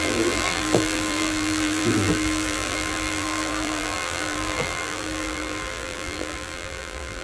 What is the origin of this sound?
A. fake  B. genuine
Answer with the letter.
A